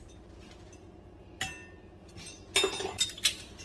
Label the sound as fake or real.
real